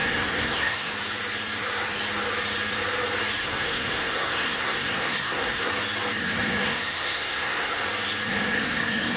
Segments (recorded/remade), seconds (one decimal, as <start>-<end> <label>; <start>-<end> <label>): 0.0-0.9 remade; 0.9-3.4 recorded; 3.4-5.7 remade; 5.7-6.2 recorded; 6.2-7.8 remade; 7.8-8.3 recorded; 8.3-9.2 remade